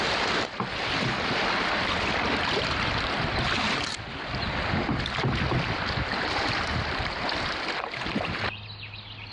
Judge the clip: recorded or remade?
remade